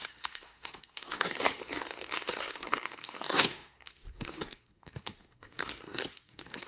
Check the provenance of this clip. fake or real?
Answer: fake